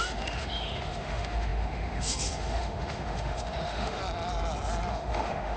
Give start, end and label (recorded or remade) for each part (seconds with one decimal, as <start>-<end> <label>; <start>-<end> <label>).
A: 0.0-4.0 remade; 4.0-4.9 recorded; 4.9-5.6 remade